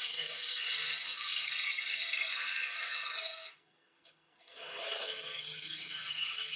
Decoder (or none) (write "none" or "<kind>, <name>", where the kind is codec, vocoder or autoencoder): codec, SNAC